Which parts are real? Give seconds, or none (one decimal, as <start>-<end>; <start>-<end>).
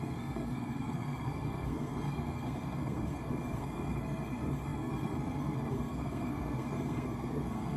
none